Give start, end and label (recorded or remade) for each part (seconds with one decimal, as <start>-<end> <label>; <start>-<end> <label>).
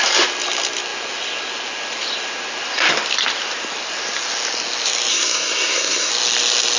0.0-5.1 recorded; 5.1-6.1 remade; 6.1-6.8 recorded